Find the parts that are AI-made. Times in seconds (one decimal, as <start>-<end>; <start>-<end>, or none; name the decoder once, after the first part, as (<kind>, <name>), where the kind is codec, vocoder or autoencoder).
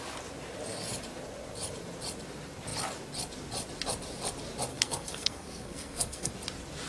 4.7-6.3 (codec, SNAC)